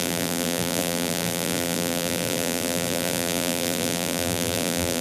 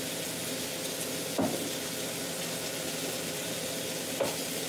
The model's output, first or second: first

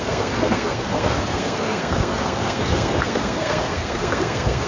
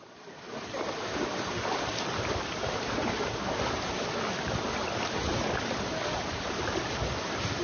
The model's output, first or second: first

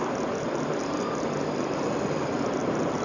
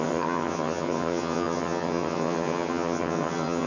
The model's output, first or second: second